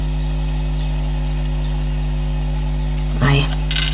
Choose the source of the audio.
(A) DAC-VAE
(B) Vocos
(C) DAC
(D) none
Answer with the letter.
D